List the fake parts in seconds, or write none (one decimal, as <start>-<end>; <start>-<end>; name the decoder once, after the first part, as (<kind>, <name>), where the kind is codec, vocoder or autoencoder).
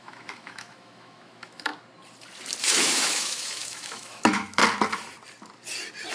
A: 0.0-1.7 (autoencoder, DAC-VAE); 2.6-4.6